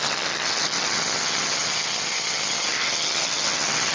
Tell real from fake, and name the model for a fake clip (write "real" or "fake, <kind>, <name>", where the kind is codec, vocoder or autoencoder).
fake, vocoder, HiFi-GAN